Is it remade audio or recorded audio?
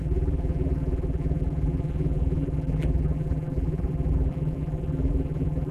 remade